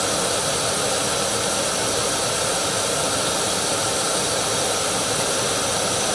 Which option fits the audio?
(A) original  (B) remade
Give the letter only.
A